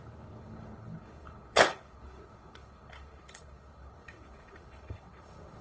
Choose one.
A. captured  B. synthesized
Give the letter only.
B